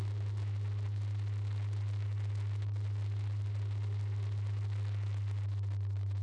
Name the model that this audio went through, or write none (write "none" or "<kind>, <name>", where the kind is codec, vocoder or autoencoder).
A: none